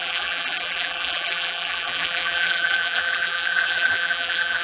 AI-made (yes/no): yes